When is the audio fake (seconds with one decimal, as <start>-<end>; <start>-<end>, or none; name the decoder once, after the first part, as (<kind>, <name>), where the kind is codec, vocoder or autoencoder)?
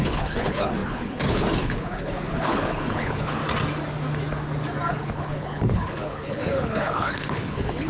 0.0-3.4 (codec, HILCodec); 4.9-7.9